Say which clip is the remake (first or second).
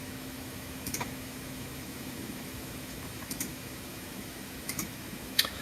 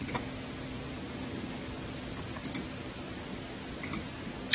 first